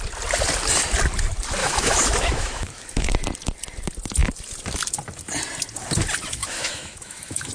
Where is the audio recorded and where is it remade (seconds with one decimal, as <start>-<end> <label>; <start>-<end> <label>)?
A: 0.0-1.6 recorded; 1.6-3.1 remade; 3.1-6.4 recorded; 6.4-7.5 remade